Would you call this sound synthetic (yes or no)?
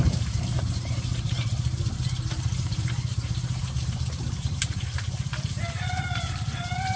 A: yes